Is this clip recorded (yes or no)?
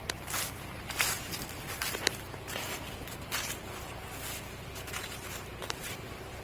no